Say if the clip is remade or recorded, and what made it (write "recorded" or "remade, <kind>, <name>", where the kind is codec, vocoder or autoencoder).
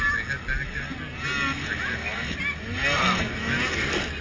recorded